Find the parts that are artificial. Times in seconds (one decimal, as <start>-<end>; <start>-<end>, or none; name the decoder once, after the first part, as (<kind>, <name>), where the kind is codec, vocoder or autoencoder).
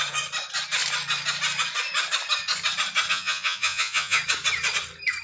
3.1-4.2 (vocoder, Vocos)